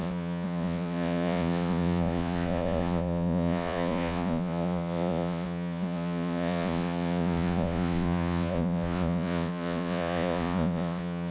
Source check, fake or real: fake